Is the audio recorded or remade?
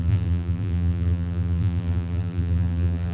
remade